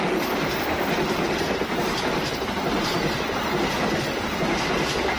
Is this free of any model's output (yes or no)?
yes